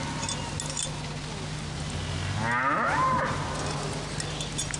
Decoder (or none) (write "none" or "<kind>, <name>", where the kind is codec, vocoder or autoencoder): none